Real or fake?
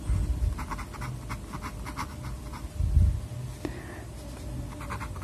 real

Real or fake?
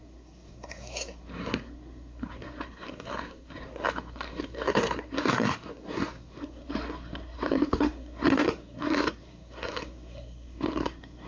fake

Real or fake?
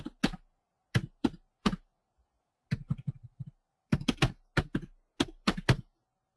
real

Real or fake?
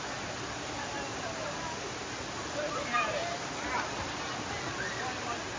real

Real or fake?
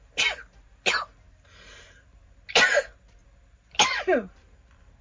real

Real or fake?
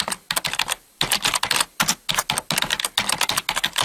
real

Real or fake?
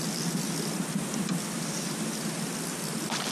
real